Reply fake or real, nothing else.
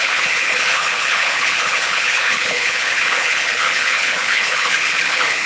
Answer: fake